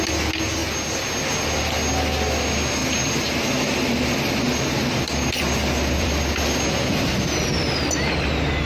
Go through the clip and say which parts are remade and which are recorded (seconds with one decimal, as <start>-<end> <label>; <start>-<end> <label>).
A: 0.0-2.8 recorded; 2.8-6.2 remade; 6.2-8.7 recorded